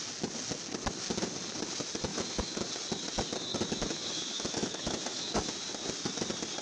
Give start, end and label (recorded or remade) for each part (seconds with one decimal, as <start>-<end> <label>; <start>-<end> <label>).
0.0-2.1 recorded; 2.1-2.7 remade; 2.7-3.5 recorded; 3.5-5.3 remade; 5.3-6.6 recorded